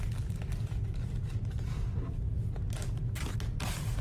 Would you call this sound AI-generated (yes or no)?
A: no